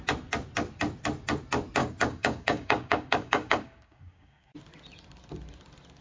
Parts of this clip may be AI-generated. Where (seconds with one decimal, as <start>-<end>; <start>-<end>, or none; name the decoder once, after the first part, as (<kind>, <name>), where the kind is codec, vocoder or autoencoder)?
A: 1.8-4.5 (codec, DAC)